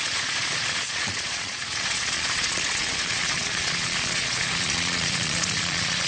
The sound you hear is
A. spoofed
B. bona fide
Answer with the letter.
A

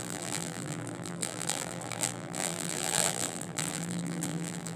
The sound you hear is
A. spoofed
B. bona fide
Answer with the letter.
A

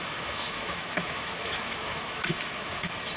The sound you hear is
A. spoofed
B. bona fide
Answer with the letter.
A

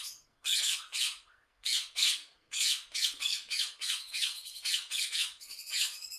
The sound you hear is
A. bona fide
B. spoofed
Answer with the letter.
B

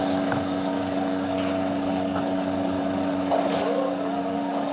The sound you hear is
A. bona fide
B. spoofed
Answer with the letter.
B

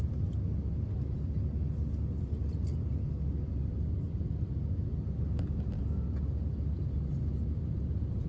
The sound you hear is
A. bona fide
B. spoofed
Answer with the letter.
A